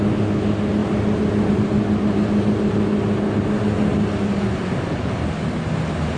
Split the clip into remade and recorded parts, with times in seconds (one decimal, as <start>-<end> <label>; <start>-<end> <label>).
0.0-6.2 recorded